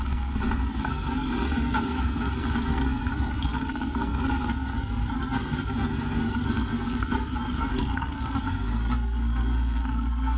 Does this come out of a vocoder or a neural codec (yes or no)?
yes